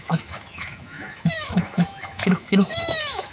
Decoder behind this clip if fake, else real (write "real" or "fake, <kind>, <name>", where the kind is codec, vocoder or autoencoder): fake, autoencoder, DAC-VAE